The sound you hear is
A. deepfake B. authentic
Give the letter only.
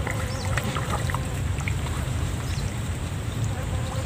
A